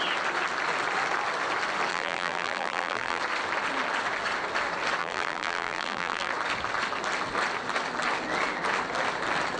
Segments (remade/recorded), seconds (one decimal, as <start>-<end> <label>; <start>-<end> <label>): 0.0-1.9 recorded; 1.9-3.2 remade; 3.2-5.0 recorded; 5.0-6.3 remade; 6.3-9.6 recorded